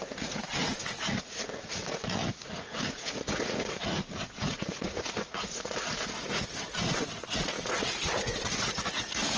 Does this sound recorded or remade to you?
remade